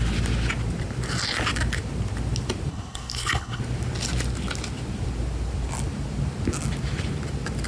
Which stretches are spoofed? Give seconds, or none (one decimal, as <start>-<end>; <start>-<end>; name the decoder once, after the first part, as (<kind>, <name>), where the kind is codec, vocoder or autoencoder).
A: 2.7-3.6 (codec, HILCodec)